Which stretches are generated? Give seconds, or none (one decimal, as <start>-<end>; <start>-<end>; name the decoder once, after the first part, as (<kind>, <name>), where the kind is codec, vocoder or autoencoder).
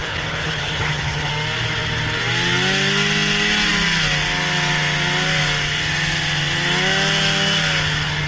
0.0-1.3 (codec, HILCodec)